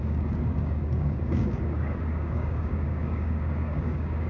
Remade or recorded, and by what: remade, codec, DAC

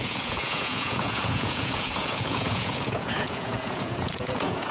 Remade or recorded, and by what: remade, vocoder, Vocos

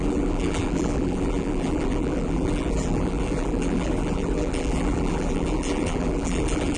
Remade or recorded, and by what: remade, vocoder, BigVGAN v2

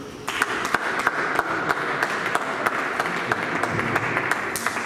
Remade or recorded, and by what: recorded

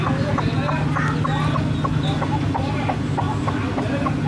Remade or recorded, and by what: recorded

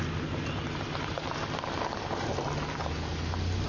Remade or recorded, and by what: recorded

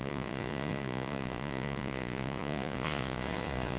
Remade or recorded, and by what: remade, vocoder, Vocos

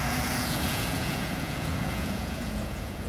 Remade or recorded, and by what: remade, vocoder, Vocos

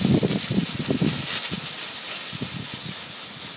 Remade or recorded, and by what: recorded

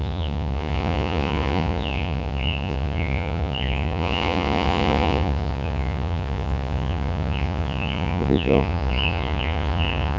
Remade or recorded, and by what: remade, vocoder, Vocos